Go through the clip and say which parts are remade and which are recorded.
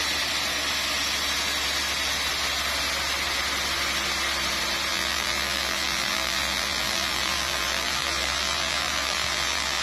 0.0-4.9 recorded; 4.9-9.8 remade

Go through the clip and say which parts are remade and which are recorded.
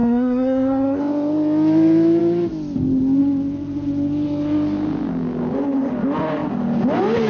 0.0-1.0 remade; 1.0-7.3 recorded